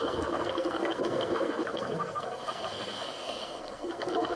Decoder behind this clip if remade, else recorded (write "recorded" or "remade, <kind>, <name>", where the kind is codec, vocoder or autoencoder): remade, codec, SNAC